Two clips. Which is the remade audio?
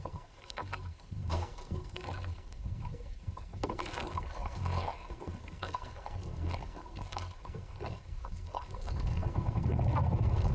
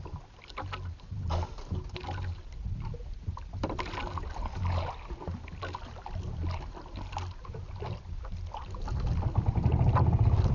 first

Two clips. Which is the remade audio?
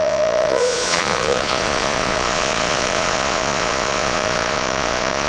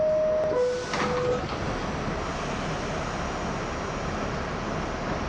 first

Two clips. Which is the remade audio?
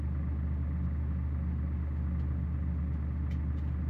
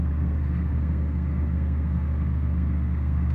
second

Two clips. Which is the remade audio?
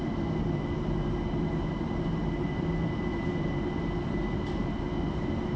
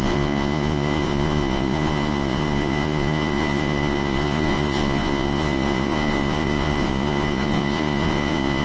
second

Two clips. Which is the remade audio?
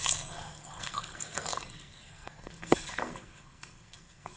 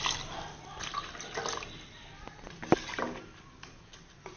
first